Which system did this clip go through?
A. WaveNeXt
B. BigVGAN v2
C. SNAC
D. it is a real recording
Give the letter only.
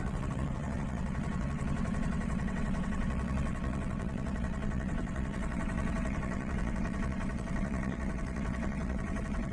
A